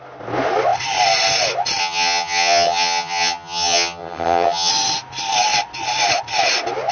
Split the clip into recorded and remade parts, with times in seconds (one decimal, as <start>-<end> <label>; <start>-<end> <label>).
0.0-1.8 recorded; 1.8-4.7 remade; 4.7-6.9 recorded